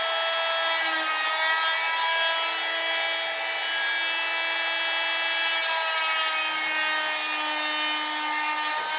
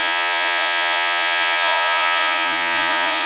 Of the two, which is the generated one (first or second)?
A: second